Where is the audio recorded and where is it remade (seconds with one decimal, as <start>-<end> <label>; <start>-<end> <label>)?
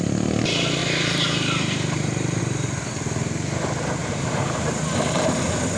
0.0-0.8 recorded; 0.8-2.4 remade; 2.4-4.0 recorded; 4.0-4.7 remade; 4.7-5.8 recorded